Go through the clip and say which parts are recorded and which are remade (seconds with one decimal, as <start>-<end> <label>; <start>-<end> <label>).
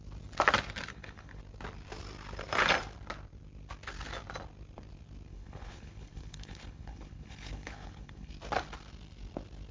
0.0-0.9 recorded; 0.9-1.4 remade; 1.4-5.3 recorded; 5.3-8.3 remade; 8.3-9.7 recorded